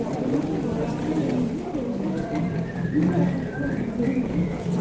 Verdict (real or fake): fake